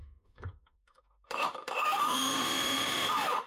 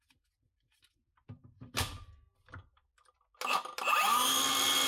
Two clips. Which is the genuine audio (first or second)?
second